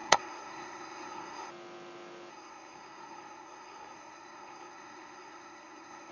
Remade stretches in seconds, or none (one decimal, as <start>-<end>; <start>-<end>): 0.0-1.5; 2.3-6.1